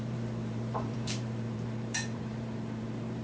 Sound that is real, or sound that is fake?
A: fake